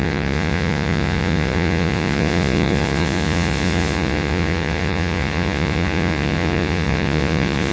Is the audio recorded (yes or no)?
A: no